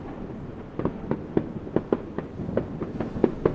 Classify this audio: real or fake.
real